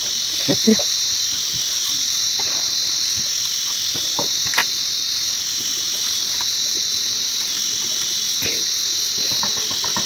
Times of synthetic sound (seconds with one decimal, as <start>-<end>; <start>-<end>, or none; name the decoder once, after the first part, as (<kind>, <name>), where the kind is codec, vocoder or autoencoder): 0.0-3.5 (vocoder, BigVGAN v2); 4.6-5.1; 5.7-8.7